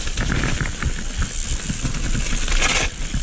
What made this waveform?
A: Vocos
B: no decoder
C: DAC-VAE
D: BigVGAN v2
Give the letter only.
B